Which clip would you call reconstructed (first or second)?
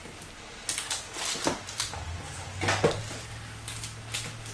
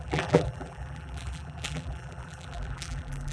second